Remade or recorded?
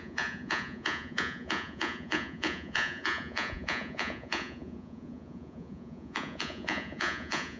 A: remade